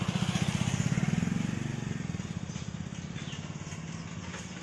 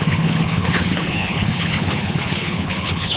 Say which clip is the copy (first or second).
second